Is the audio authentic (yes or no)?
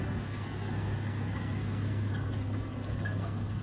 no